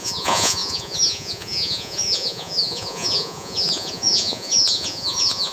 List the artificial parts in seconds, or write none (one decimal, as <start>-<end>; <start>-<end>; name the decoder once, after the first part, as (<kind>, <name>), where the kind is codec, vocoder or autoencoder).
0.0-5.5 (vocoder, Vocos)